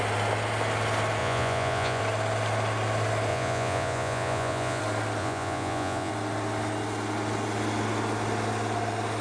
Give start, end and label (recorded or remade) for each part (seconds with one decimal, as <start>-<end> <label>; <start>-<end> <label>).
0.0-1.2 recorded; 1.2-2.0 remade; 2.0-3.3 recorded; 3.3-4.8 remade; 4.8-5.2 recorded; 5.2-6.1 remade; 6.1-9.2 recorded

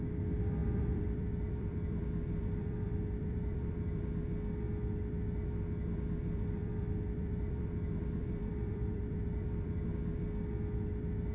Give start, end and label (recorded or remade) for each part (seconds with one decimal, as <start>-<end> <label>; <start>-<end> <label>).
0.0-0.6 recorded; 0.6-4.0 remade; 4.0-5.8 recorded; 5.8-9.9 remade; 9.9-11.3 recorded